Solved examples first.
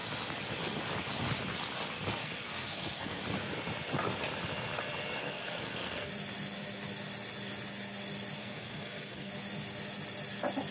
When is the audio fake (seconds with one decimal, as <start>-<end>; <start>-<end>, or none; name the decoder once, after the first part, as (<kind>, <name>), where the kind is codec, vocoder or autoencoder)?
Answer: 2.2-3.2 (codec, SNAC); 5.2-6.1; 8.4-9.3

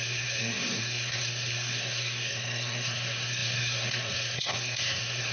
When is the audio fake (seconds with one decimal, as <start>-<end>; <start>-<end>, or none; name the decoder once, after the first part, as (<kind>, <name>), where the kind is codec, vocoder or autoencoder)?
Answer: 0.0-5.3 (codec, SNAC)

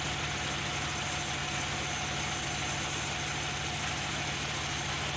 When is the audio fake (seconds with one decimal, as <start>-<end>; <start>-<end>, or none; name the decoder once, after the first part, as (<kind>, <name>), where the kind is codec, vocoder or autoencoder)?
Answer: none